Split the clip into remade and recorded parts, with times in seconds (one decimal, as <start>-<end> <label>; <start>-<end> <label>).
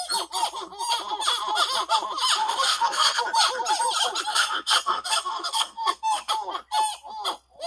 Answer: 0.0-2.4 recorded; 2.4-3.2 remade; 3.2-4.3 recorded; 4.3-6.3 remade; 6.3-7.7 recorded